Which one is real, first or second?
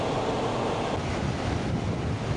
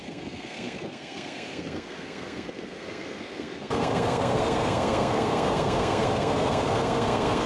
first